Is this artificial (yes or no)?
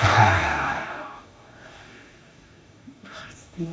yes